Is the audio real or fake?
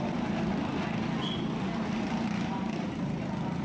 real